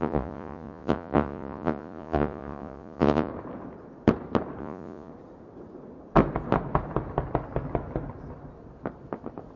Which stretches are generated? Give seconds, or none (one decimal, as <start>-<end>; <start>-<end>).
0.0-3.3; 4.6-5.1

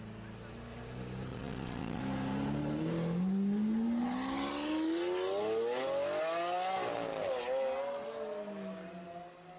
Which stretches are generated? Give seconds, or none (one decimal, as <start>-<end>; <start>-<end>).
1.3-2.0